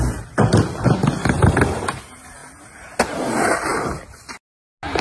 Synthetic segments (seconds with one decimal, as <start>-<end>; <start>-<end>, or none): none